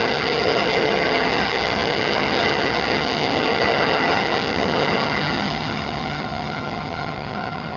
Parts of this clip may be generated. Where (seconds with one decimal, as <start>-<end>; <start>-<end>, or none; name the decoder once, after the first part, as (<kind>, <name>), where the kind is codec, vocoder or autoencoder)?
0.0-7.8 (vocoder, HiFi-GAN)